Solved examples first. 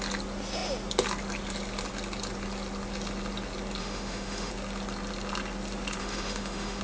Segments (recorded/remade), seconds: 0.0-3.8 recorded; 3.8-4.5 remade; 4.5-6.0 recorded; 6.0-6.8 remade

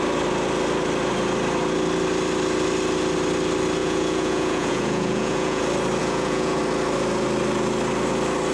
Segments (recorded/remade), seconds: 0.0-3.8 recorded; 3.8-5.6 remade; 5.6-6.0 recorded; 6.0-6.6 remade; 6.6-8.5 recorded

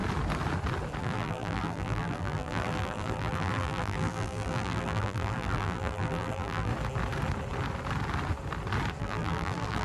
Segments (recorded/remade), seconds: 0.0-1.0 recorded; 1.0-6.7 remade; 6.7-9.0 recorded; 9.0-9.8 remade

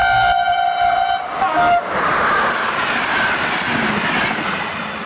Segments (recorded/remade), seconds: 0.0-5.1 recorded